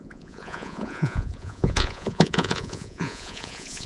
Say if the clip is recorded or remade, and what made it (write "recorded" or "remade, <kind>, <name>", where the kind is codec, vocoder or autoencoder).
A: remade, vocoder, Vocos